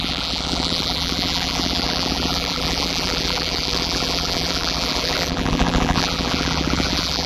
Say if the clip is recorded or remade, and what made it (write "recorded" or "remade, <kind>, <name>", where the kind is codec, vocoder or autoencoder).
remade, vocoder, BigVGAN v2